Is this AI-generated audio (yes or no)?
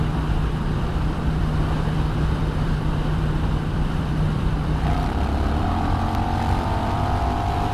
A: yes